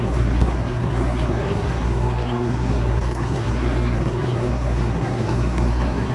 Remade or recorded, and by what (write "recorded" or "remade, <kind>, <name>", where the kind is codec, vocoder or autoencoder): remade, codec, SNAC